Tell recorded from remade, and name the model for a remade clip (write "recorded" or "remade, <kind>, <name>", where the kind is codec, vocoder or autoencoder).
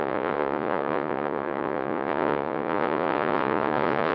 remade, vocoder, Vocos